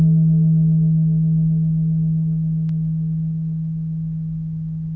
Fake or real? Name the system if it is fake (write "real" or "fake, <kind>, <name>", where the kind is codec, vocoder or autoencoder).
real